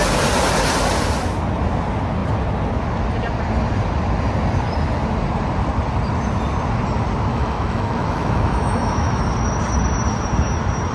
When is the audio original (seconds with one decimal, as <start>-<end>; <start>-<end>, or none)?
0.0-7.3; 9.2-10.9